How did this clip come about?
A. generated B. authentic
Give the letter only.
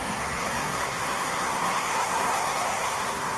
A